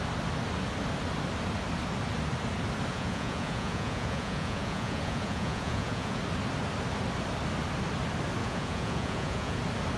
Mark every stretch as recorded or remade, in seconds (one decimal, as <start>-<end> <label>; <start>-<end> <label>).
0.0-2.9 recorded; 2.9-6.2 remade; 6.2-8.4 recorded; 8.4-9.6 remade; 9.6-10.0 recorded